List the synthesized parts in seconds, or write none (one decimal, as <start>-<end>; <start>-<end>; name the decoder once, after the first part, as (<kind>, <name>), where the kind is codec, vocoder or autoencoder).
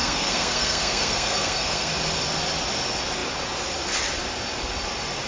0.0-1.9 (codec, SNAC)